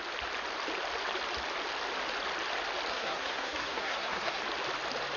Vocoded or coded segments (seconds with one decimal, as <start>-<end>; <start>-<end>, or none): 2.9-4.4